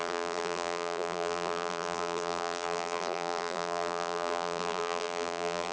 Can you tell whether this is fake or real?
fake